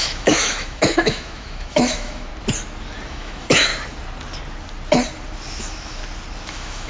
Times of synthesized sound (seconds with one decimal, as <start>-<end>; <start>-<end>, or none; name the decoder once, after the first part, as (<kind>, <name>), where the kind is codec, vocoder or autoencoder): 0.0-2.3 (autoencoder, DAC-VAE); 3.1-3.7; 5.6-6.0; 6.5-6.9